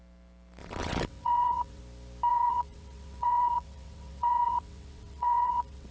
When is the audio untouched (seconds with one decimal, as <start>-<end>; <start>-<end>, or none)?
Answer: 0.0-0.6; 1.8-2.3